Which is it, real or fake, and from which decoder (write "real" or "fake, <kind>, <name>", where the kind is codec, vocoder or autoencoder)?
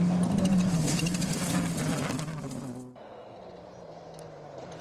real